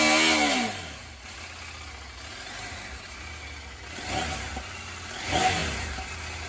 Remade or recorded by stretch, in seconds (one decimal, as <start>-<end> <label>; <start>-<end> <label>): 0.0-6.5 recorded